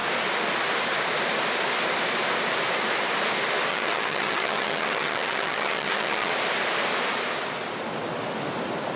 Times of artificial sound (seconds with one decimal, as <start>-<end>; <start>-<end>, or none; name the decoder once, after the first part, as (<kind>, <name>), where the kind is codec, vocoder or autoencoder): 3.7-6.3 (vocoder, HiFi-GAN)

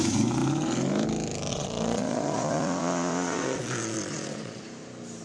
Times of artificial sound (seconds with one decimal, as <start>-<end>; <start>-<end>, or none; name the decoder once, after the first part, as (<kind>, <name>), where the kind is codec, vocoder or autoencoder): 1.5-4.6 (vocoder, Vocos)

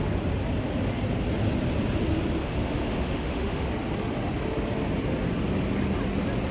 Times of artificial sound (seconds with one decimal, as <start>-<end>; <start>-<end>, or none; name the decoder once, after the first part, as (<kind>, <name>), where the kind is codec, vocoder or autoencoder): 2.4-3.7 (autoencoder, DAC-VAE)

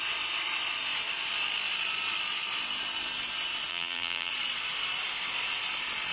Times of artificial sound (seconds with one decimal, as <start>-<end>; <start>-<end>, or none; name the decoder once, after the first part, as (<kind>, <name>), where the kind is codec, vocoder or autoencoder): 3.7-4.3 (vocoder, BigVGAN v2)

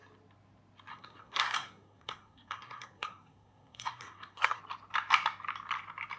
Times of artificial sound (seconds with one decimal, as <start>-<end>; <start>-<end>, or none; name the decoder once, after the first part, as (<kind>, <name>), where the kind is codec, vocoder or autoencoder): 0.9-4.6 (codec, SNAC)

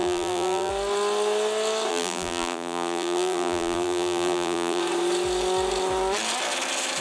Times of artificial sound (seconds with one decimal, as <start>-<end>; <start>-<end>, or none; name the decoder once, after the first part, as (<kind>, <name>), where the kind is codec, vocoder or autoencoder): 0.0-0.7 (vocoder, BigVGAN v2); 1.9-4.8

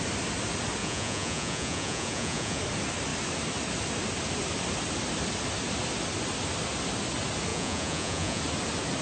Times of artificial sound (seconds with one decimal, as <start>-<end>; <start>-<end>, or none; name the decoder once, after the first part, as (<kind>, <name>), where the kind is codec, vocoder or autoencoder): 0.8-2.6 (vocoder, Vocos); 7.5-8.4

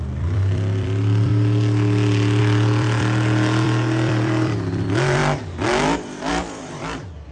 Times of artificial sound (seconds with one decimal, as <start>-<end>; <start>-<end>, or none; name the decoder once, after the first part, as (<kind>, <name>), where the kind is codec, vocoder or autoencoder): 0.0-1.3 (vocoder, BigVGAN v2); 2.4-5.2; 6.3-7.3